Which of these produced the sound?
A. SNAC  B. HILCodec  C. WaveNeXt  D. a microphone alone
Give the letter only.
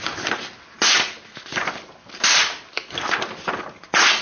D